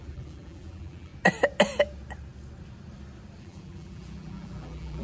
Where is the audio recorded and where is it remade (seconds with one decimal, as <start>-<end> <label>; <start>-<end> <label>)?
0.0-1.1 remade; 1.1-3.4 recorded; 3.4-5.0 remade